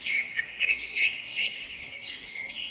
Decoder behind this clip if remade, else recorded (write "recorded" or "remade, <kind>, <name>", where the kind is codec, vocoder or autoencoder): remade, codec, SNAC